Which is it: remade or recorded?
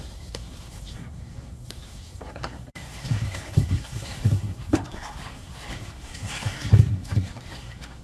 remade